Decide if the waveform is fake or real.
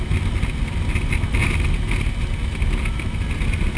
real